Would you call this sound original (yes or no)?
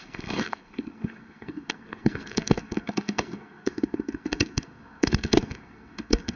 no